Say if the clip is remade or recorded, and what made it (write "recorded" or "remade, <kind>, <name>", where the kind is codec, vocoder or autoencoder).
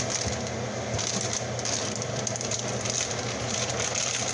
recorded